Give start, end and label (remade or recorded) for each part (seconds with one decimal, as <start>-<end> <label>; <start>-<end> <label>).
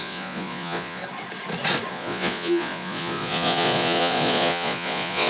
0.0-1.0 remade; 1.0-1.9 recorded; 1.9-5.3 remade